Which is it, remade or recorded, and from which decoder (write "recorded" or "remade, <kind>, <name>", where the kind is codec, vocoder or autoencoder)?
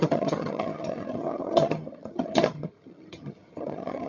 remade, vocoder, HiFi-GAN